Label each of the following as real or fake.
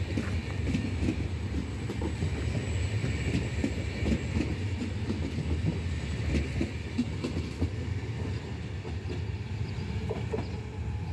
real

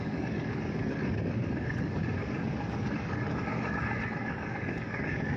fake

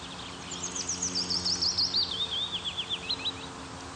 real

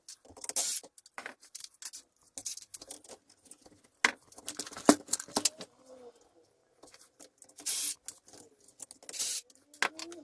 real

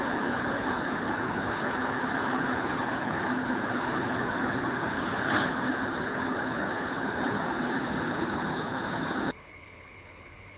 fake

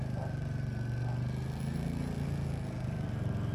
real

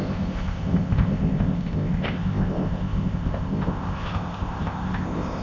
fake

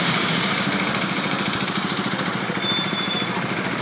fake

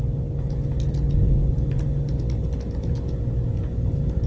real